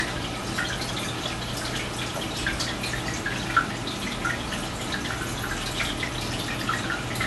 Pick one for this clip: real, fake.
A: real